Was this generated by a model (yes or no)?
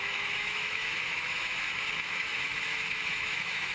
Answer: yes